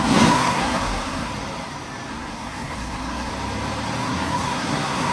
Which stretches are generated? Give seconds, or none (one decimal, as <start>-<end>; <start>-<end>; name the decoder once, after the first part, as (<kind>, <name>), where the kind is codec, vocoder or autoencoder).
0.0-1.3 (codec, SNAC); 2.1-3.3; 4.0-5.1